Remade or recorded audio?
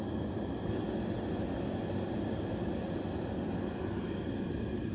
recorded